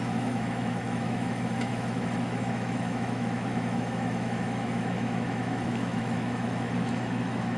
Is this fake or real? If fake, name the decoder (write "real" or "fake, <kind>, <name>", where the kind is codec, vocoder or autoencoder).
fake, autoencoder, DAC-VAE